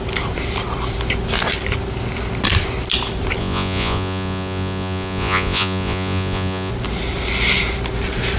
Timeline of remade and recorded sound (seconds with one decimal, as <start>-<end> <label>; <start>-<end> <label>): 0.0-3.4 recorded; 3.4-6.7 remade; 6.7-8.4 recorded